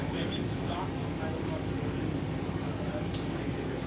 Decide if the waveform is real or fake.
fake